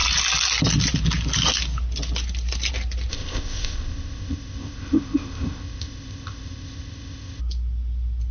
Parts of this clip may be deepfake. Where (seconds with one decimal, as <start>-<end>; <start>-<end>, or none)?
3.1-7.4